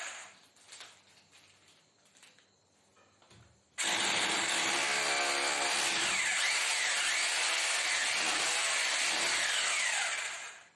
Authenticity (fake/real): real